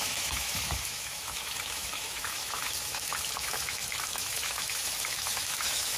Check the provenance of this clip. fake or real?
fake